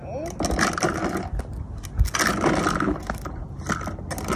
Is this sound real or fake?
real